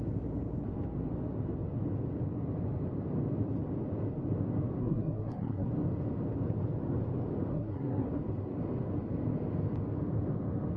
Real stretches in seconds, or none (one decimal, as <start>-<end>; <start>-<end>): 0.0-4.8; 5.7-7.5; 8.1-10.8